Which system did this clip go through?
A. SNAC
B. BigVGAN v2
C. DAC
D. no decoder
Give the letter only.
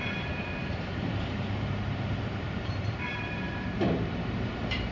B